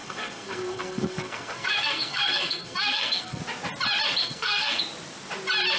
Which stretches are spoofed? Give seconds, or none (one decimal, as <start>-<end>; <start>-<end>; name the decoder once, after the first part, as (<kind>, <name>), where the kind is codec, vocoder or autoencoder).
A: 0.0-3.4 (codec, SNAC); 4.2-4.8